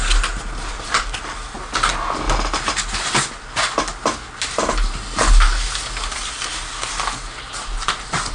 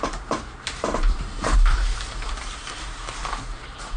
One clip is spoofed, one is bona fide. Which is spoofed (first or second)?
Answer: second